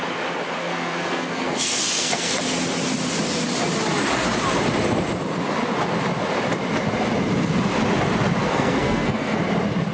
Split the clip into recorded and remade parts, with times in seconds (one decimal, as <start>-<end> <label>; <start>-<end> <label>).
0.0-0.6 recorded; 0.6-2.4 remade; 2.4-8.4 recorded; 8.4-9.4 remade; 9.4-9.9 recorded